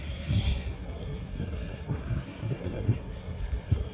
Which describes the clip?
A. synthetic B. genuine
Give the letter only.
A